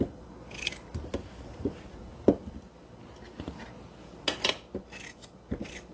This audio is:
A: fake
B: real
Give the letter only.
B